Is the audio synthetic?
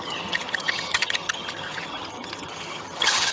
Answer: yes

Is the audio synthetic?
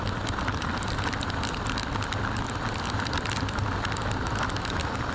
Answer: no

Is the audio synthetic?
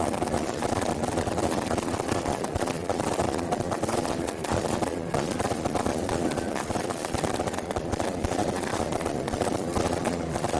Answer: yes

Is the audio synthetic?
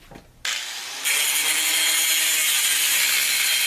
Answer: no